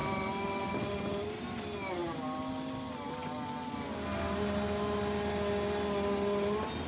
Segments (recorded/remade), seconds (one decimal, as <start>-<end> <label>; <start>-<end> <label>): 0.0-6.9 recorded